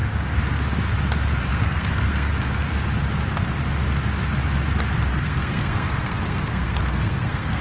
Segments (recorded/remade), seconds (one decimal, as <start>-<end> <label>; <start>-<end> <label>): 0.0-1.5 recorded; 1.5-2.3 remade; 2.3-5.1 recorded; 5.1-7.6 remade